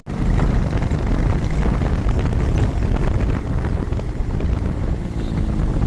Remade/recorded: recorded